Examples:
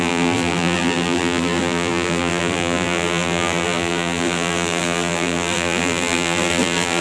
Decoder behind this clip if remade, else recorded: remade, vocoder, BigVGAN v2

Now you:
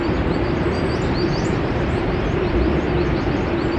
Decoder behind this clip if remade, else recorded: remade, vocoder, BigVGAN v2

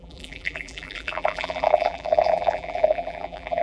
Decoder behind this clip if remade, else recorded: remade, vocoder, BigVGAN v2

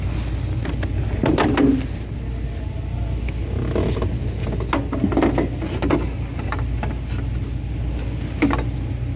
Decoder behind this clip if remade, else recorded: recorded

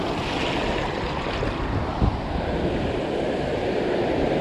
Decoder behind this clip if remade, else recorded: recorded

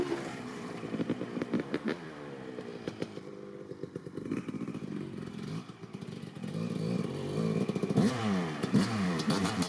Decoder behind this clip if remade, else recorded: remade, vocoder, BigVGAN v2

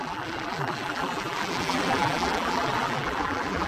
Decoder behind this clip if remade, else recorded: remade, vocoder, BigVGAN v2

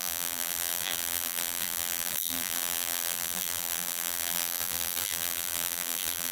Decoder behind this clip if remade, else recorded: remade, vocoder, BigVGAN v2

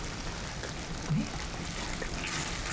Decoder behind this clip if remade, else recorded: recorded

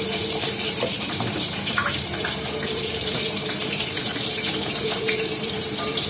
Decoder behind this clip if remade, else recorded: remade, vocoder, BigVGAN v2